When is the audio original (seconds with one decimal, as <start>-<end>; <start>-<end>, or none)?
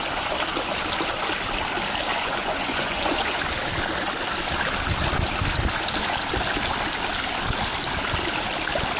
0.0-2.1; 3.4-9.0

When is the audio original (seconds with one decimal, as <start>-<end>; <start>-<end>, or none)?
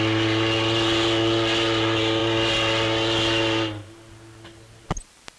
0.0-5.4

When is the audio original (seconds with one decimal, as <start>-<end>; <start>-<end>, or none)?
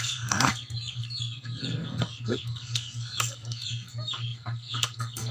none